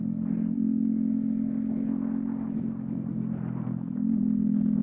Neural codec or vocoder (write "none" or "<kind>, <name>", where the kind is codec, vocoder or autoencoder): none